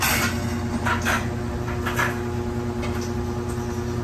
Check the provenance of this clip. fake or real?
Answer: real